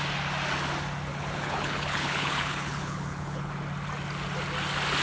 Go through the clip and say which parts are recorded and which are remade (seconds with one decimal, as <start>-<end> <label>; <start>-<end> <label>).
0.0-1.1 recorded; 1.1-3.5 remade; 3.5-5.0 recorded